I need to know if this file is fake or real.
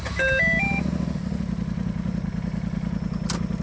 real